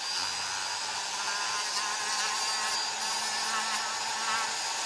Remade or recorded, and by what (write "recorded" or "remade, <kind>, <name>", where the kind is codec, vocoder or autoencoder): recorded